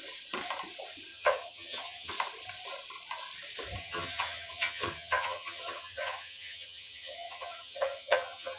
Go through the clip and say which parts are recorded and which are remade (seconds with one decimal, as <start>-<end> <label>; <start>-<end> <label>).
0.0-1.1 recorded; 1.1-2.1 remade; 2.1-3.8 recorded; 3.8-8.6 remade